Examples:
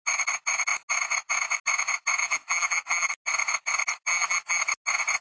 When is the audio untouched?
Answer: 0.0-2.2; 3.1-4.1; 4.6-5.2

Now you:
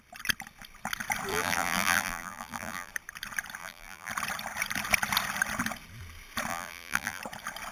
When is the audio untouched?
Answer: 0.0-1.3; 2.9-3.6; 4.1-6.5; 7.2-7.7

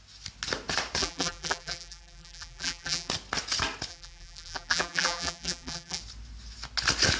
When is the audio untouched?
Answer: 0.0-1.0; 3.1-3.9; 6.0-7.2

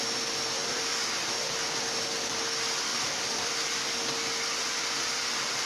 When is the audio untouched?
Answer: 0.0-0.6; 1.3-2.9; 3.5-5.7

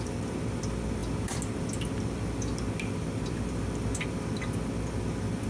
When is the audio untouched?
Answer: 0.0-5.5

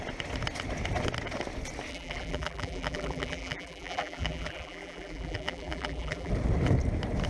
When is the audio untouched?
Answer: 0.0-1.9; 6.3-7.3